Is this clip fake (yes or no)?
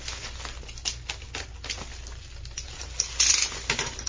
no